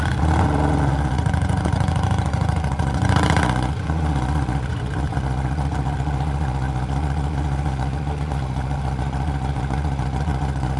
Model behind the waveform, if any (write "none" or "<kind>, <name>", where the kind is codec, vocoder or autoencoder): vocoder, Vocos